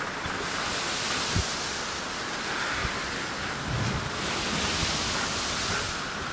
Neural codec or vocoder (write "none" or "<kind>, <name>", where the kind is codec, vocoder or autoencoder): none